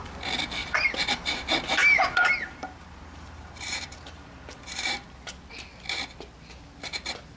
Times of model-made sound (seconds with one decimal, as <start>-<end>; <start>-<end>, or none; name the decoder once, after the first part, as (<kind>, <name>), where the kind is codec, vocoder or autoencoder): 0.6-1.4 (vocoder, BigVGAN v2); 1.8-5.4